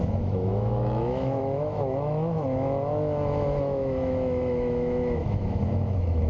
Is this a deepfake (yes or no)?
yes